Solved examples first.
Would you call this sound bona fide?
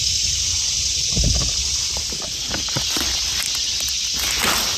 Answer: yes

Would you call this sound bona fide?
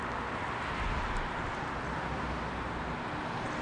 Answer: yes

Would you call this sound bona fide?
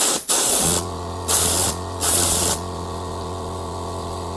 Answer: no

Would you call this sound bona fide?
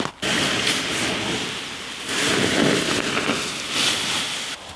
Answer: yes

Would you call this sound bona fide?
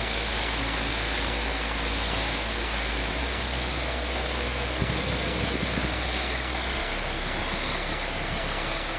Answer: no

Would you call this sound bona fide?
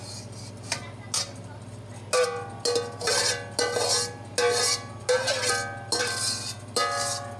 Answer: yes